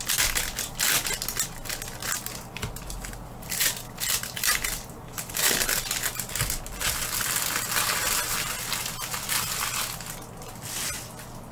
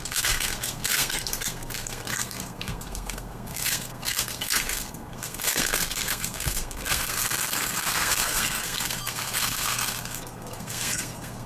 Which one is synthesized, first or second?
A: second